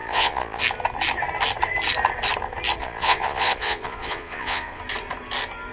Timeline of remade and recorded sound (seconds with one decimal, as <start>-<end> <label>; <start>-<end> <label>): 0.0-0.6 remade; 0.6-2.8 recorded; 2.8-4.8 remade; 4.8-5.7 recorded

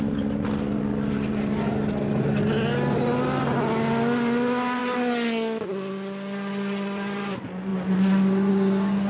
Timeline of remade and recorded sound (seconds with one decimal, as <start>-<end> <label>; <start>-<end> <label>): 0.0-9.1 recorded